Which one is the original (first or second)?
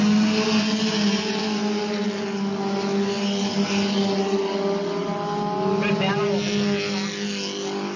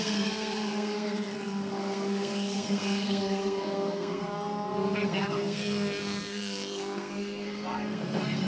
first